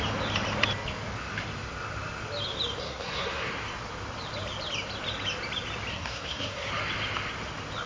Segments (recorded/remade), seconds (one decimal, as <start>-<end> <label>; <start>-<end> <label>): 0.0-2.8 recorded; 2.8-3.5 remade; 3.5-5.9 recorded; 5.9-6.7 remade; 6.7-7.9 recorded

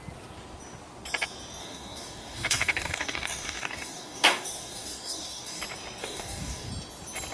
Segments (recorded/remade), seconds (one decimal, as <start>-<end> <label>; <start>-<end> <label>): 0.0-1.6 recorded; 1.6-5.6 remade; 5.6-6.0 recorded; 6.0-6.7 remade; 6.7-7.3 recorded

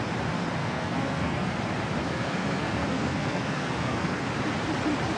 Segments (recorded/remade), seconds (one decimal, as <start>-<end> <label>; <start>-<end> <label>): 0.0-0.6 recorded; 0.6-1.5 remade; 1.5-2.0 recorded; 2.0-4.3 remade; 4.3-5.2 recorded

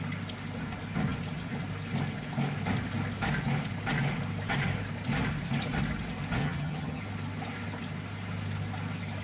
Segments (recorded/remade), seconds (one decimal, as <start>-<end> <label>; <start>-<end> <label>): 0.0-6.4 recorded; 6.4-7.0 remade; 7.0-9.2 recorded

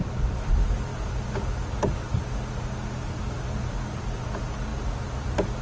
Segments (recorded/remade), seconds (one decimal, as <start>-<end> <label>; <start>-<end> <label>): 0.0-5.6 recorded

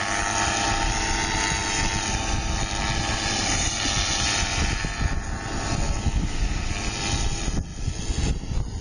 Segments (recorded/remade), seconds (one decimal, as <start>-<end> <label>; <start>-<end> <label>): 0.0-6.2 recorded; 6.2-6.7 remade; 6.7-8.8 recorded

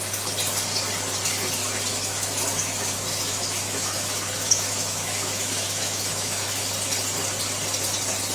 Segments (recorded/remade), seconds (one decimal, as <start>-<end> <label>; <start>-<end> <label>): 0.0-1.9 recorded; 1.9-6.7 remade; 6.7-8.3 recorded